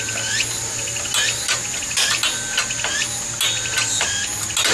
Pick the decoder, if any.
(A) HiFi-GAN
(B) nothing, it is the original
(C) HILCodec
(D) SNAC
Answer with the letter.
B